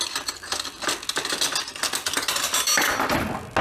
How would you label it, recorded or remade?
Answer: recorded